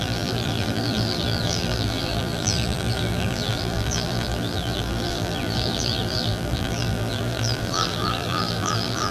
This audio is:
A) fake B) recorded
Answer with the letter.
A